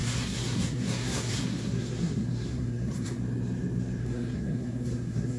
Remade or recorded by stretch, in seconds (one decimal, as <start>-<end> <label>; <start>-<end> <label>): 0.0-3.2 remade; 3.2-4.0 recorded; 4.0-5.4 remade